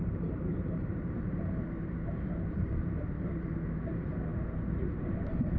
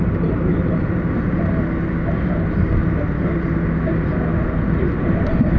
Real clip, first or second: second